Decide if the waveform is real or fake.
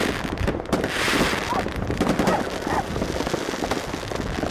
real